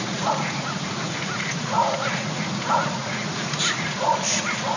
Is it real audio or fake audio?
fake